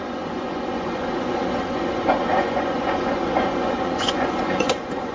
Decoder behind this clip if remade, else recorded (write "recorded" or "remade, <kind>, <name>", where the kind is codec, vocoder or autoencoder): remade, vocoder, Vocos